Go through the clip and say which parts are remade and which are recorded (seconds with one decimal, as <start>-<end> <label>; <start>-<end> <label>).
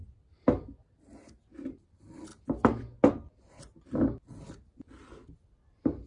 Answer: 0.0-0.9 recorded; 0.9-2.3 remade; 2.3-3.5 recorded; 3.5-6.1 remade